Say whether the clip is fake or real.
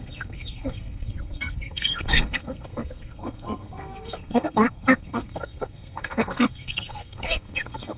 fake